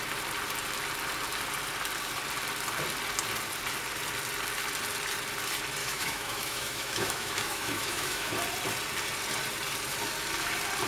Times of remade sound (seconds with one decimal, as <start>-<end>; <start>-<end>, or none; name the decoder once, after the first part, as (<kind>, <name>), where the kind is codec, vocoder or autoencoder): 5.8-8.3 (autoencoder, DAC-VAE)